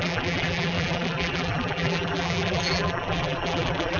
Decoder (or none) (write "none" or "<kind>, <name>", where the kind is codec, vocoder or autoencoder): vocoder, BigVGAN v2